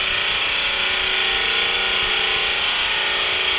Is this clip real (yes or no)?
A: yes